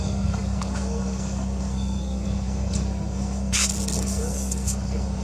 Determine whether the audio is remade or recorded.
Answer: remade